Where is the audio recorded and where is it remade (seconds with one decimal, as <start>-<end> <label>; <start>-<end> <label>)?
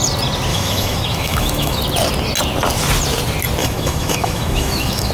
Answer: 0.0-0.5 recorded; 0.5-1.8 remade; 1.8-3.6 recorded; 3.6-5.1 remade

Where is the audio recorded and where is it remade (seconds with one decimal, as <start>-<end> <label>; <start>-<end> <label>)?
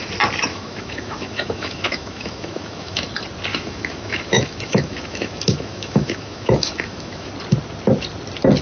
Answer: 0.0-0.5 recorded; 0.5-3.1 remade; 3.1-3.5 recorded; 3.5-7.3 remade; 7.3-8.6 recorded